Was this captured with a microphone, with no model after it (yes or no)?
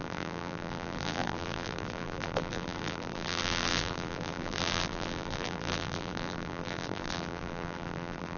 no